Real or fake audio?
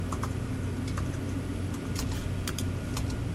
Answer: real